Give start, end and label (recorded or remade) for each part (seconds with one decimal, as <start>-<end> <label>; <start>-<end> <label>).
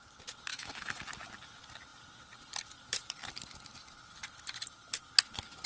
0.0-0.5 recorded; 0.5-1.0 remade; 1.0-5.7 recorded